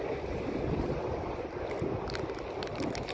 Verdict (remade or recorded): recorded